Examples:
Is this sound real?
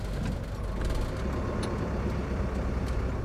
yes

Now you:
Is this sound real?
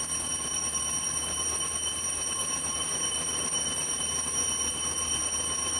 no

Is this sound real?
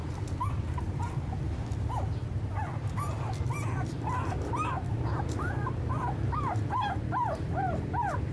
no